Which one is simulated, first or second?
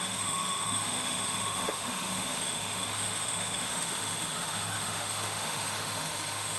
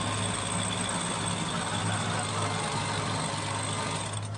first